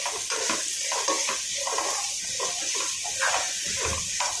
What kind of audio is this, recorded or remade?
recorded